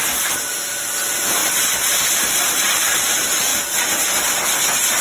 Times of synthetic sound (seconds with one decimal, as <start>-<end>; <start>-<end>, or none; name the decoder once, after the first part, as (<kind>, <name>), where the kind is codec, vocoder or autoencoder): none